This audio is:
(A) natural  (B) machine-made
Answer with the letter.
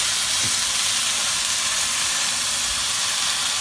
A